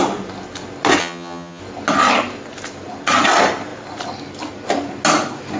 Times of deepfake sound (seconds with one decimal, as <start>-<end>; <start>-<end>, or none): 1.0-1.6